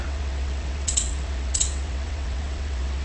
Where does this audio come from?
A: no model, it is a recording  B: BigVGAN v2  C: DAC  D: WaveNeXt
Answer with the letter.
D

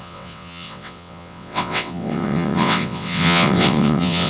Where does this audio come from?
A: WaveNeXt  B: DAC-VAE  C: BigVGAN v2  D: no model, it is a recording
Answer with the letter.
A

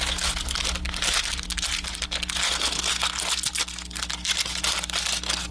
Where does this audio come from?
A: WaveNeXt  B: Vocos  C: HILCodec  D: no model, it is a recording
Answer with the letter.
D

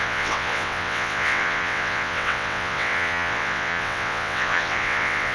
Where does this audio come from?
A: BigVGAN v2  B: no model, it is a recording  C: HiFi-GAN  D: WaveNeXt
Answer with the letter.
D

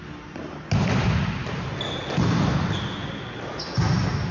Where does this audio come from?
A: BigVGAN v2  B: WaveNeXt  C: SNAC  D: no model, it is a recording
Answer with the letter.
D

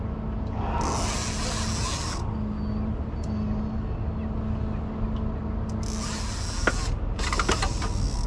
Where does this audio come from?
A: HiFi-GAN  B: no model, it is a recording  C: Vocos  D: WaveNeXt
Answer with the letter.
B